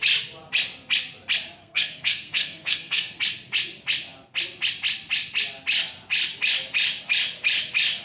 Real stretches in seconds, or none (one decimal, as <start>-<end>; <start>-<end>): 0.0-1.6; 3.2-8.0